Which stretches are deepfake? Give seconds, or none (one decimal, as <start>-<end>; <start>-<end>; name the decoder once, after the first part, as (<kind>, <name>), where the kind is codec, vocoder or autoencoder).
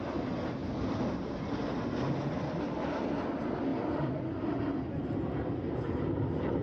none